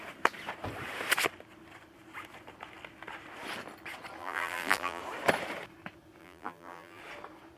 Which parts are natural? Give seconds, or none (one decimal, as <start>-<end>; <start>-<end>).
0.0-4.2; 5.0-6.2; 7.0-7.6